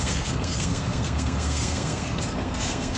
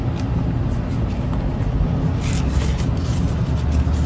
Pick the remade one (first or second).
first